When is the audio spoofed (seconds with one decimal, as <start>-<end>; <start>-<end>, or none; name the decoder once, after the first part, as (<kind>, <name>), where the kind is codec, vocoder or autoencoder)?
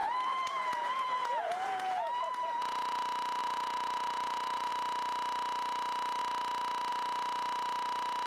0.0-3.0 (vocoder, Vocos); 3.4-4.7